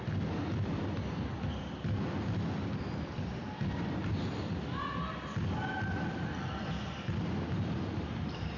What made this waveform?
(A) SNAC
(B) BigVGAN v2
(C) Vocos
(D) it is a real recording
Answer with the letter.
B